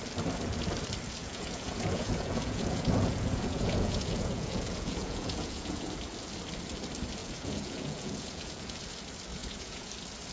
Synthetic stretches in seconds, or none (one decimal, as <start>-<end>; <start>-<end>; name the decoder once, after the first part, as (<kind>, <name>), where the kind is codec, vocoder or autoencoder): 1.2-5.9 (vocoder, Vocos); 7.2-8.8; 9.4-9.9